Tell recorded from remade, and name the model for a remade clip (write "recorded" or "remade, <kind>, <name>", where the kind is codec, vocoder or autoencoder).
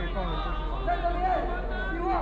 recorded